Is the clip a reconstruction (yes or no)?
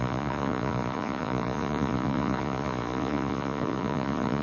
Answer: yes